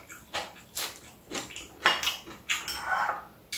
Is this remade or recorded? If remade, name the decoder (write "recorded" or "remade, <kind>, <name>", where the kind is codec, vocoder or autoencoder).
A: recorded